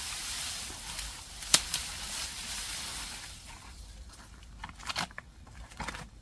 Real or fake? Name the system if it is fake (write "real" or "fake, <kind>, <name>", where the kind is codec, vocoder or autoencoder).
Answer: fake, vocoder, BigVGAN v2